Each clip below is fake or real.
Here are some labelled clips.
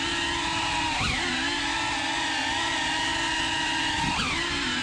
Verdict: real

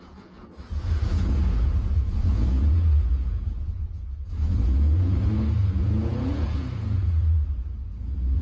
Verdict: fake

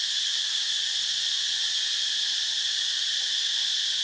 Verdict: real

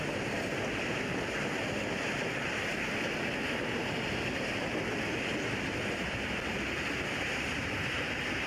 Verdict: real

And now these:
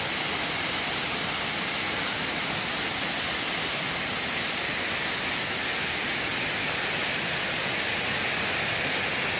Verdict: real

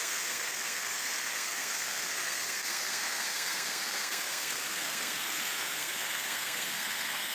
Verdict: fake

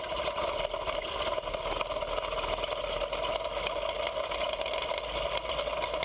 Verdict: real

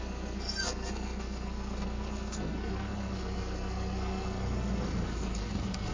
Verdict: fake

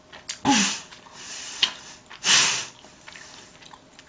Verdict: real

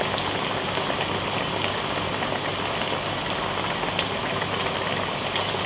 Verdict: real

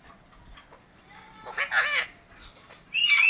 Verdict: real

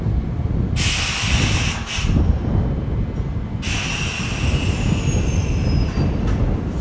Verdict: real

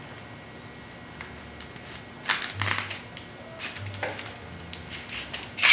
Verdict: real